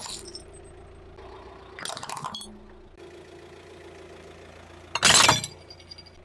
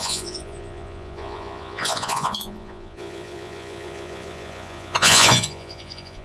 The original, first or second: first